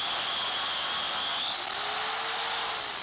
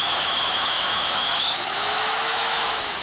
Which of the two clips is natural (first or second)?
first